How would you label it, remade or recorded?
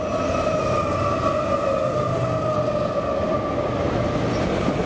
recorded